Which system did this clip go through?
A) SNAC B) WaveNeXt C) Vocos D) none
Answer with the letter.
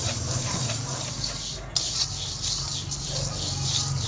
D